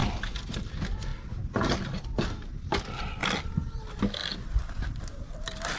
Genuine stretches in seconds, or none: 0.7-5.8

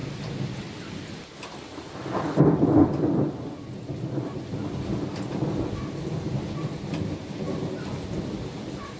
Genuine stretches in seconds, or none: 0.0-9.0